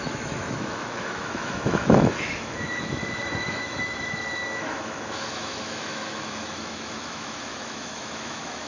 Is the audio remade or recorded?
remade